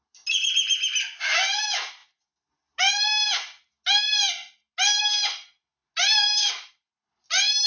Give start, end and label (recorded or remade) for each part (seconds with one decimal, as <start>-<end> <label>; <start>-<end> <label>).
0.0-7.7 recorded